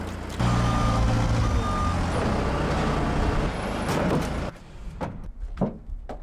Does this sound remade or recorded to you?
recorded